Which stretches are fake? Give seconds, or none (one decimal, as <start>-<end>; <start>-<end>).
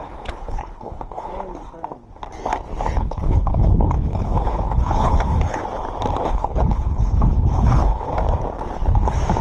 0.0-1.3; 3.0-5.6; 6.3-8.1